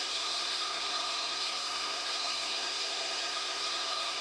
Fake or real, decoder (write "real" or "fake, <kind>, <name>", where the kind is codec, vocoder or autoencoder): fake, codec, SNAC